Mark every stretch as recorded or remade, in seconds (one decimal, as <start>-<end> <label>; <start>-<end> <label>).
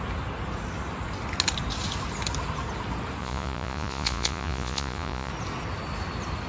0.0-3.2 recorded; 3.2-5.3 remade; 5.3-6.5 recorded